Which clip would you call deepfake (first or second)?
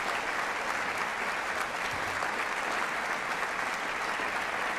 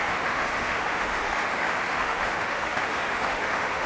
second